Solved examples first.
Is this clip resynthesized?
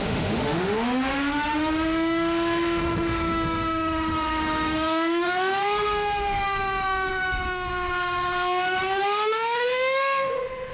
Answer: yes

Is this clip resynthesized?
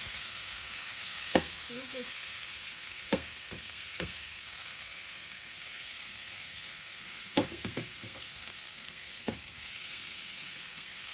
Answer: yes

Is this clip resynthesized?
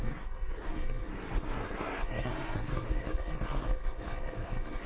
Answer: yes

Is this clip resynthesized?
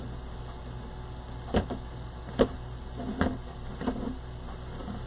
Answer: no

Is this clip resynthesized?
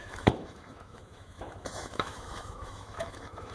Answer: yes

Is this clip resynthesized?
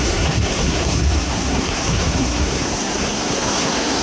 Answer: yes